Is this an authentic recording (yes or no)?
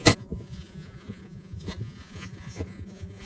no